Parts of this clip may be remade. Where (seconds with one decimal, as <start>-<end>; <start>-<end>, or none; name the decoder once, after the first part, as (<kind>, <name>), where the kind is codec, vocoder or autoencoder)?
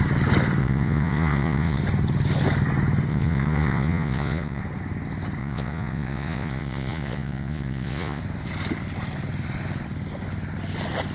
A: 0.6-1.8 (vocoder, Vocos); 3.1-4.6; 5.4-8.2